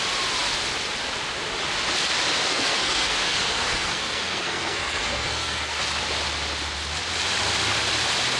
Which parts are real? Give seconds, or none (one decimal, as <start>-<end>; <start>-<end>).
0.0-2.5; 5.8-8.4